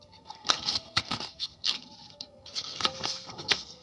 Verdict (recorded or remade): remade